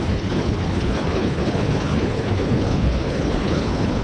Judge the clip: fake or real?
fake